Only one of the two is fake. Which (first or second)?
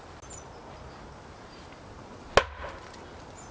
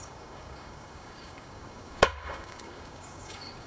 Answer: second